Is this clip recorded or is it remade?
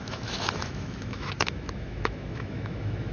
remade